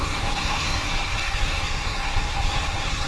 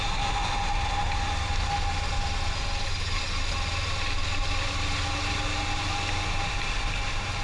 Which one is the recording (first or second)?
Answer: second